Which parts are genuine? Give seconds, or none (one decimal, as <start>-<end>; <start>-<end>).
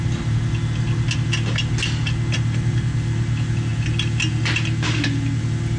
0.0-5.8